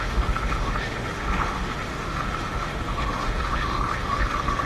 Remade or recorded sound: remade